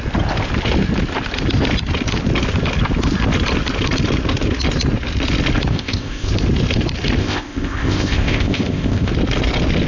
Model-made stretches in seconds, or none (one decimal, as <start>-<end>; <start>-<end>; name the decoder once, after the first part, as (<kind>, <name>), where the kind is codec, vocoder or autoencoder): 5.7-6.3 (codec, ZipCodec); 7.2-9.1